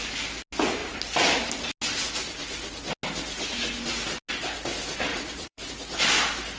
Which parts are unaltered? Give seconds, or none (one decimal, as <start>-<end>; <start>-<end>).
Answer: 0.0-5.1; 5.7-6.6